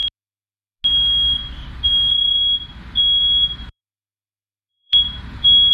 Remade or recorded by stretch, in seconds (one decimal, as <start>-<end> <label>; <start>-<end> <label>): 0.0-3.2 recorded; 3.2-3.8 remade; 3.8-4.7 recorded; 4.7-5.7 remade